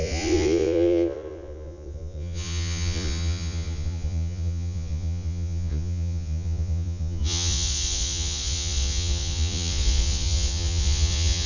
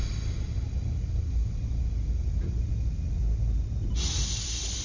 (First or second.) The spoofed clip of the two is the first